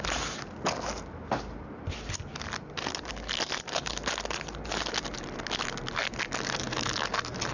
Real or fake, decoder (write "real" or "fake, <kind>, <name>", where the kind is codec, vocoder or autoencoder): real